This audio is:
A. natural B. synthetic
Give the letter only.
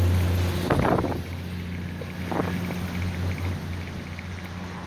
A